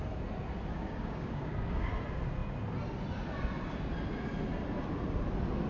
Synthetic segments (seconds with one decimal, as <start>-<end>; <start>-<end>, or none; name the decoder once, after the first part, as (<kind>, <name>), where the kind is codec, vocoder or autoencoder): 0.7-1.9 (codec, DAC)